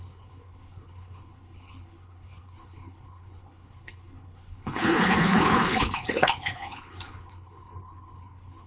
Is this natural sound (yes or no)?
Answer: no